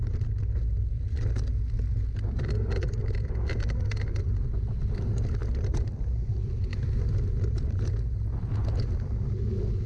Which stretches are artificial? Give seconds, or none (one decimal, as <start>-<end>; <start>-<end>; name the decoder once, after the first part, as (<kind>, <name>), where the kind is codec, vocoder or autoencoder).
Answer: 5.4-7.9 (vocoder, BigVGAN v2)

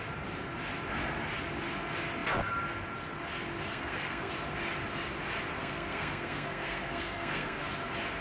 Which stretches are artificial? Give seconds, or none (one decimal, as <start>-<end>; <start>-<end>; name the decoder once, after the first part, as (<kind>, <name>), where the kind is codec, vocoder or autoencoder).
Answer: 3.7-4.3 (codec, SNAC); 5.6-7.7